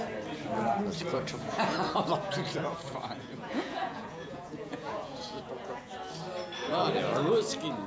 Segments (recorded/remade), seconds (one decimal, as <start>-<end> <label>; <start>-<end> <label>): 0.0-1.1 recorded; 1.1-5.8 remade; 5.8-7.9 recorded